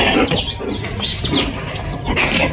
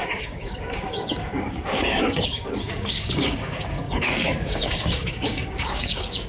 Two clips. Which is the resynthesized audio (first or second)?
second